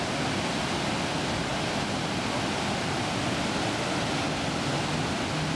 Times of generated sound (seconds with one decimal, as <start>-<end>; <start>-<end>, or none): none